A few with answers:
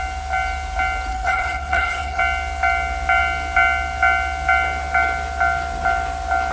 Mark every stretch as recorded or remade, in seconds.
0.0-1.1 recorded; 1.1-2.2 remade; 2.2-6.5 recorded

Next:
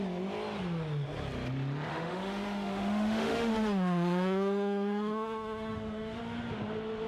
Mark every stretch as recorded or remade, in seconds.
0.0-1.9 recorded; 1.9-6.2 remade; 6.2-7.1 recorded